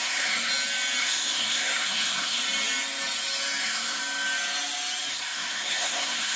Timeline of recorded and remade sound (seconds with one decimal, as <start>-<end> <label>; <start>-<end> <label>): 0.0-0.5 remade; 0.5-1.0 recorded; 1.0-2.4 remade; 2.4-3.6 recorded; 3.6-4.0 remade; 4.0-5.1 recorded; 5.1-6.4 remade